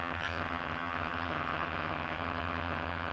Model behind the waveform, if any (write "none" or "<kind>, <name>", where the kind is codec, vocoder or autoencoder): vocoder, HiFi-GAN